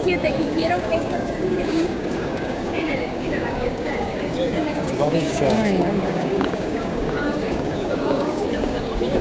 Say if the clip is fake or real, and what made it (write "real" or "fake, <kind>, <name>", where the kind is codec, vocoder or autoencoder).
fake, codec, DAC